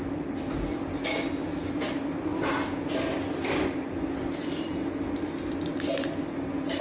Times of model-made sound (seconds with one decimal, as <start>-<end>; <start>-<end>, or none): none